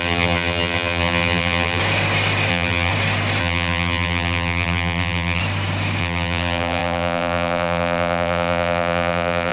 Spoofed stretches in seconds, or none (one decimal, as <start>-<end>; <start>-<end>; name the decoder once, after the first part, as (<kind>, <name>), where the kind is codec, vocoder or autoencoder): 0.0-1.8 (vocoder, BigVGAN v2); 2.5-2.9; 3.4-5.4; 6.0-9.5